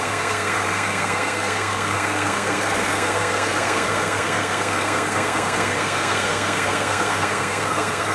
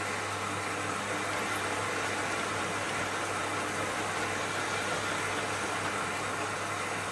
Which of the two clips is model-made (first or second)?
first